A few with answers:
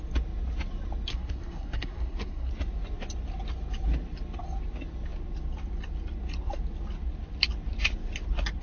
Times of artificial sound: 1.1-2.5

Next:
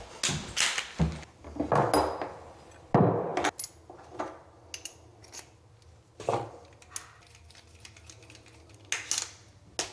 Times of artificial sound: none

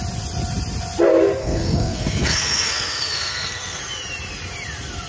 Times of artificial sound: 1.4-3.8